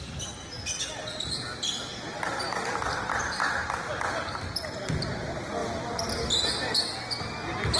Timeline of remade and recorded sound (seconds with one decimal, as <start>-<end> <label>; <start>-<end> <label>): 0.0-5.6 recorded; 5.6-6.1 remade; 6.1-7.8 recorded